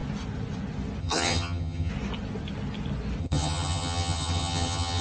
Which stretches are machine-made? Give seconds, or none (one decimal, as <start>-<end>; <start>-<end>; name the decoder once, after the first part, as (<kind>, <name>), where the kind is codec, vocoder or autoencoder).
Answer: 1.0-1.9 (vocoder, HiFi-GAN); 3.2-5.0